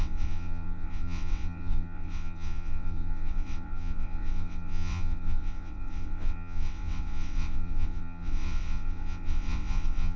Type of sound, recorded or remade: remade